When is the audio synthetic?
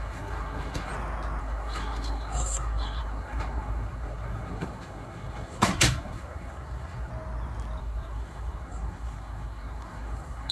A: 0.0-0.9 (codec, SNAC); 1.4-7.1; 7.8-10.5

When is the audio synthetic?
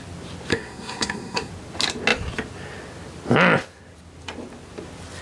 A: 0.5-1.5 (codec, SNAC)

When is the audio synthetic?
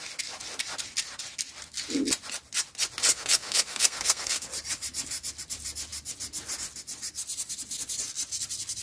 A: 3.1-4.5 (codec, SNAC)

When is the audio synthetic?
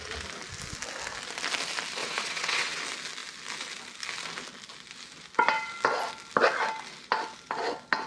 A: 2.0-2.8 (vocoder, WaveNeXt)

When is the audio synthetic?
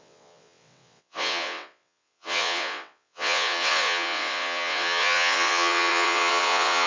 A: 0.0-6.9 (vocoder, WaveNeXt)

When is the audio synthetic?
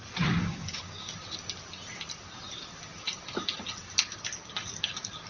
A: 0.4-1.1 (codec, DAC)